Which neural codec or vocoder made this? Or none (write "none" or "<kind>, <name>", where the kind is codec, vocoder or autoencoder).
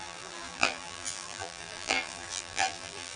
vocoder, BigVGAN v2